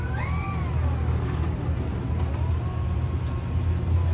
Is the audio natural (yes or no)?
yes